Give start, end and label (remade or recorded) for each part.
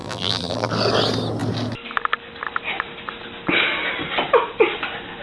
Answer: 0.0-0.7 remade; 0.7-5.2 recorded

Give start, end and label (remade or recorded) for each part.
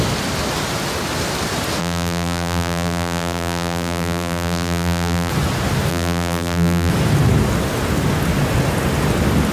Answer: 0.0-1.8 recorded; 1.8-5.3 remade; 5.3-5.9 recorded; 5.9-6.9 remade; 6.9-9.5 recorded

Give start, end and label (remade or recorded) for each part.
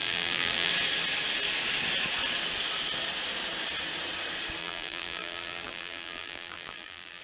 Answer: 0.0-0.7 remade; 0.7-4.6 recorded; 4.6-7.2 remade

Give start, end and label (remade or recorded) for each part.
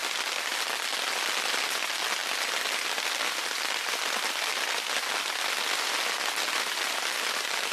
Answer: 0.0-7.7 recorded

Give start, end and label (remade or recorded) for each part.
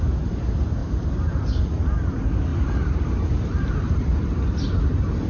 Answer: 0.0-0.8 recorded; 0.8-1.6 remade; 1.6-2.5 recorded; 2.5-4.4 remade; 4.4-5.3 recorded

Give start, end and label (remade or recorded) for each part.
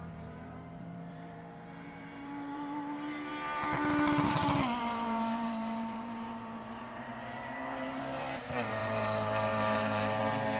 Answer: 0.0-3.3 remade; 3.3-4.8 recorded; 4.8-10.6 remade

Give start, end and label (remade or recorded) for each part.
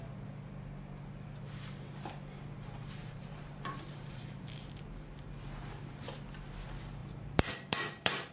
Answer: 0.0-3.0 recorded; 3.0-5.1 remade; 5.1-7.0 recorded; 7.0-8.3 remade